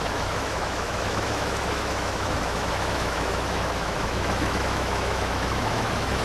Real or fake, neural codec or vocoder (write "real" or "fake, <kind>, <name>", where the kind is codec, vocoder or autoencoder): fake, autoencoder, DAC-VAE